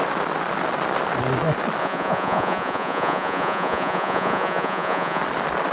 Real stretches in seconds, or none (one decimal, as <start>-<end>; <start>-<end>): 0.0-1.8; 5.2-5.7